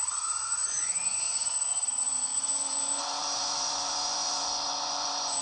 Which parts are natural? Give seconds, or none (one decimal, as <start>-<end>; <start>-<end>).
none

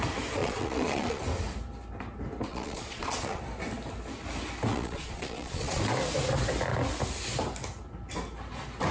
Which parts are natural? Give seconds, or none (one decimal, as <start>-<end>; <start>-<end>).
0.0-0.4; 1.2-2.5; 3.4-4.7; 5.8-8.9

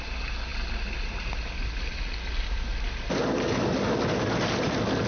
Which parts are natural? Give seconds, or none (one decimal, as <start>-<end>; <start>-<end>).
0.0-5.1

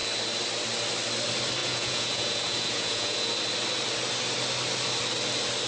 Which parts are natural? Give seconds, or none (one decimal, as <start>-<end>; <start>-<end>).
0.0-1.6; 3.3-5.7